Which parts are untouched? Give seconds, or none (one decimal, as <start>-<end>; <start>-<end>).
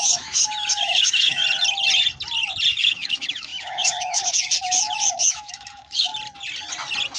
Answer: 1.4-2.7; 6.1-7.2